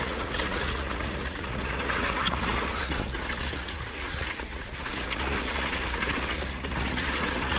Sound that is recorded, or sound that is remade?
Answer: remade